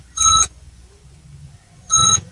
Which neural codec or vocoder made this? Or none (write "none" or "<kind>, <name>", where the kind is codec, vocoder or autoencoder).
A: vocoder, Vocos